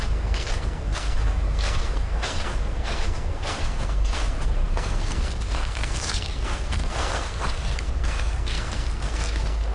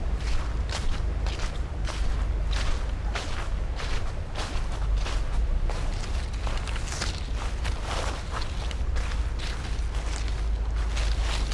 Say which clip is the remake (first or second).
first